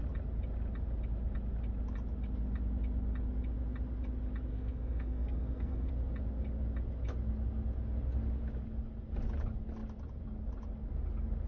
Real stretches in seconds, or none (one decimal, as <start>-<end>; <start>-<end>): 0.0-4.5; 5.9-11.5